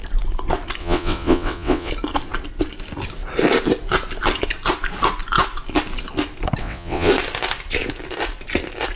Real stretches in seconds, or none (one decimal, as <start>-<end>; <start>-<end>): 0.0-0.8; 1.9-6.6; 7.1-9.0